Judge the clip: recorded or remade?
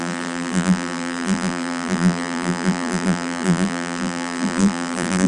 remade